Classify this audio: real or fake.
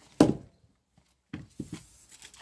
real